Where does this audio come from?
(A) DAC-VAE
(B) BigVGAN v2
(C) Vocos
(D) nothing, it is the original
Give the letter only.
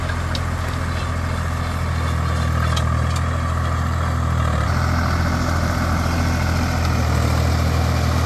D